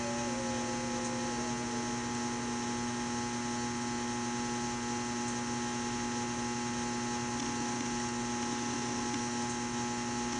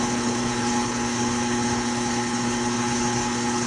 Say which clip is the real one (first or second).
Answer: first